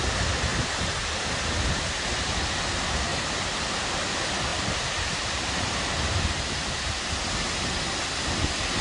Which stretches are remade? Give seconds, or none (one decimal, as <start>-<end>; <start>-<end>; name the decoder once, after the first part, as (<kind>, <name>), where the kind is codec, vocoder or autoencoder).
0.5-1.4 (vocoder, BigVGAN v2); 3.1-3.7; 4.5-7.1